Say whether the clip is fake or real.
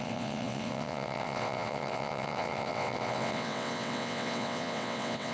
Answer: fake